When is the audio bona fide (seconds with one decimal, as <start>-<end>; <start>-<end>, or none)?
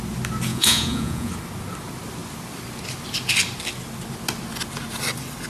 0.0-0.5; 1.3-5.5